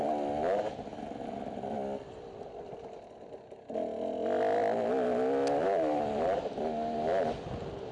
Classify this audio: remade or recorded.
recorded